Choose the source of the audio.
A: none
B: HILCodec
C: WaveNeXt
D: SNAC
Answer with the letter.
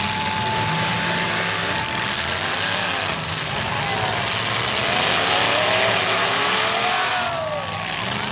A